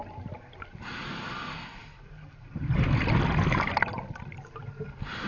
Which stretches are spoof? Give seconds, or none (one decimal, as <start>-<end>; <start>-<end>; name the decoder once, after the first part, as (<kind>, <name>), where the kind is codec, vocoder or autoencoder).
none